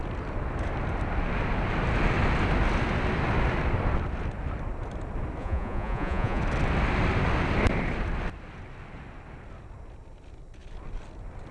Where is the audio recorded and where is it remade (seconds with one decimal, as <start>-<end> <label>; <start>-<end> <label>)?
0.0-5.4 recorded; 5.4-6.4 remade; 6.4-11.5 recorded